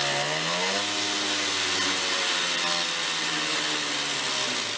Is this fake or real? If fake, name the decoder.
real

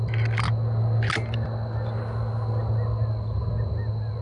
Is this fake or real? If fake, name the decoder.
real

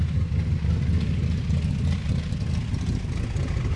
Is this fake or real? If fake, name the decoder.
real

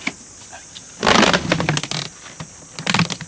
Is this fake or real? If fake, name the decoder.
real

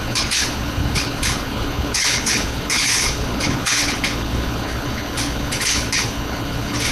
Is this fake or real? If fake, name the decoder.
fake, codec, HILCodec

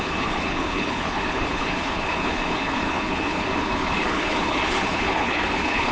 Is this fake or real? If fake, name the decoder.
fake, codec, HILCodec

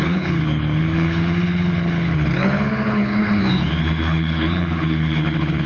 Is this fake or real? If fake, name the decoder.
fake, codec, HILCodec